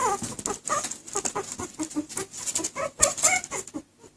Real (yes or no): yes